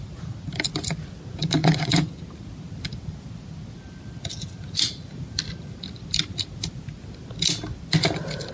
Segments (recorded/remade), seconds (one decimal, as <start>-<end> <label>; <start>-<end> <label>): 0.0-1.6 recorded; 1.6-2.2 remade; 2.2-8.5 recorded